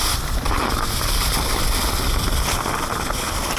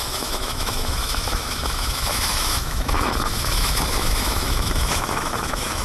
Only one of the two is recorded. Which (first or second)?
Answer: first